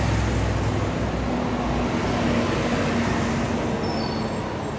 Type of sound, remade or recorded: recorded